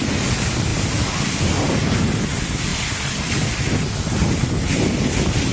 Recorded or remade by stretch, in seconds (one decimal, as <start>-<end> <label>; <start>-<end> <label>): 0.0-5.5 recorded